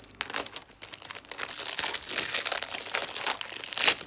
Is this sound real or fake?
real